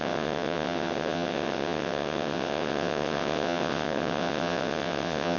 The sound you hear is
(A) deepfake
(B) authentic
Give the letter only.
A